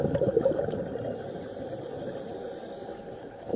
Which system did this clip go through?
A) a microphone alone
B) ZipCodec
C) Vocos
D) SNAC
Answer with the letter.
A